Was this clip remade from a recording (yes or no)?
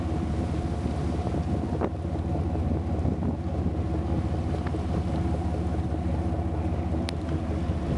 no